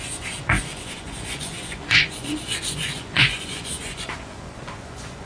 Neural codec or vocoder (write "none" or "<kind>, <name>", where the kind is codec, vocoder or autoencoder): vocoder, Vocos